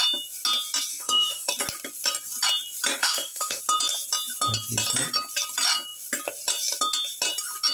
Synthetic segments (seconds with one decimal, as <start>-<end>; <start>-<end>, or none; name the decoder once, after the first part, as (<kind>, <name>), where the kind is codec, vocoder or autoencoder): 0.9-1.5 (autoencoder, DAC-VAE); 3.0-3.6